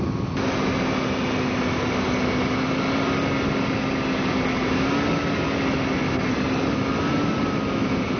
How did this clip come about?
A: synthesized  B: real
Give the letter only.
B